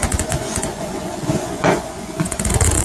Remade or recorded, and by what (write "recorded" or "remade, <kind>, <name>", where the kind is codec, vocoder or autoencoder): remade, vocoder, Vocos